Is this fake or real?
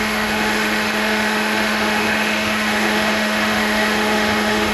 fake